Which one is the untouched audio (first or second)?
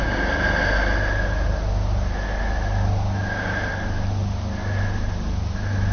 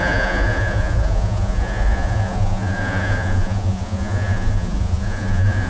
first